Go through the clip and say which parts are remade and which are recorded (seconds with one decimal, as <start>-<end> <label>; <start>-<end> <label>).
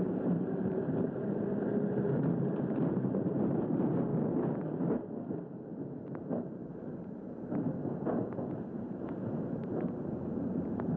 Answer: 0.0-4.1 remade; 4.1-6.2 recorded; 6.2-6.7 remade; 6.7-8.8 recorded; 8.8-11.0 remade